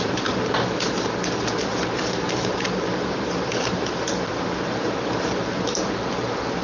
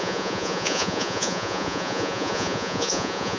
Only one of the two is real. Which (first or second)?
first